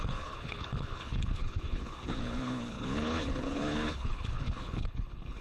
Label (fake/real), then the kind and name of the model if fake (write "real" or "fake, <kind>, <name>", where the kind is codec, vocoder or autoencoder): fake, codec, HILCodec